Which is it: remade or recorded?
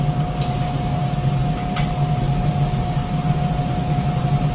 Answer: recorded